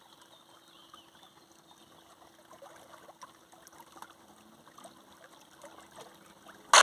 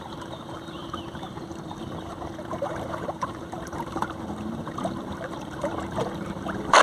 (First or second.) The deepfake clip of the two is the second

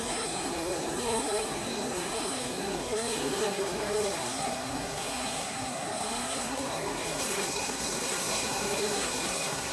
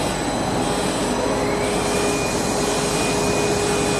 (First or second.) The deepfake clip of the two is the first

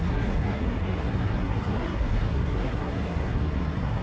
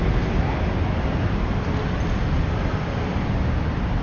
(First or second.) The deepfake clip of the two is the first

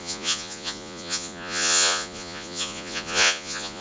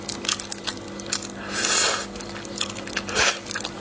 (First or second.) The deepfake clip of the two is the first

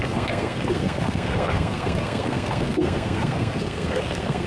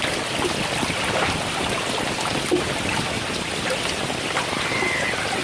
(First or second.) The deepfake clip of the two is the first